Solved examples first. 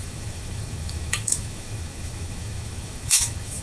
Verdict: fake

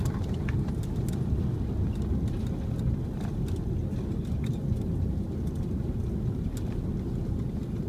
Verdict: real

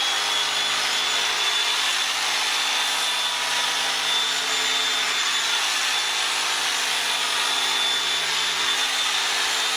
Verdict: real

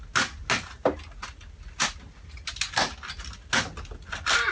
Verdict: real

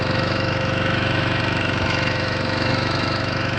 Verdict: fake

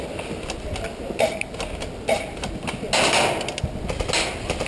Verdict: real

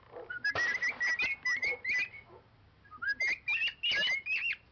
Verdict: real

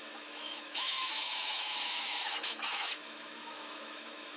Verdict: fake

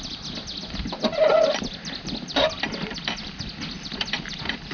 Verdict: real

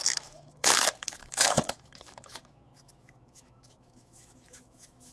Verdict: fake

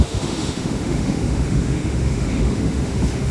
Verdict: fake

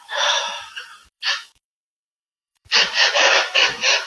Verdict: fake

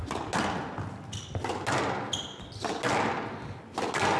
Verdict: real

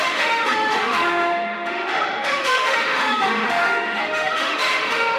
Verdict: fake